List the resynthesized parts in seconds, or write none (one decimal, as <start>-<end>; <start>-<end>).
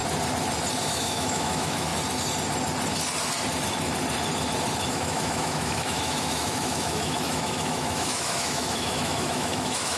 0.8-1.9; 4.9-10.0